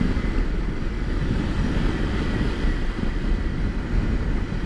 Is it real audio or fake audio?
real